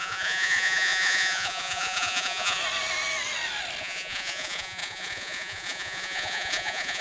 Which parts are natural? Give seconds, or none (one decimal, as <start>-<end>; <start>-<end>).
2.6-3.8